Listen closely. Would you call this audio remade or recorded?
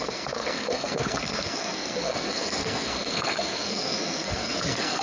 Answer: remade